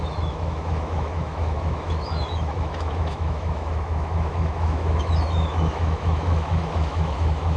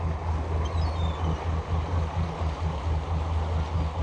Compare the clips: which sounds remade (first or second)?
first